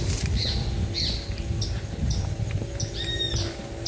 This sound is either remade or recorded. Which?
recorded